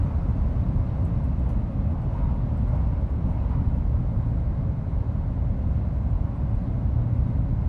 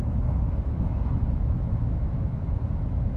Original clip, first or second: first